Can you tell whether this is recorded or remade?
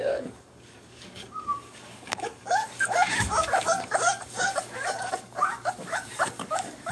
remade